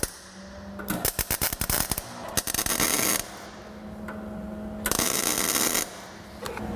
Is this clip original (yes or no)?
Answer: yes